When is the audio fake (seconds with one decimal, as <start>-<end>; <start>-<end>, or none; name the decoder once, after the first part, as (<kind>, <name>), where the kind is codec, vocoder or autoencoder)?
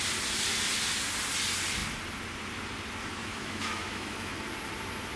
3.2-4.3 (autoencoder, DAC-VAE)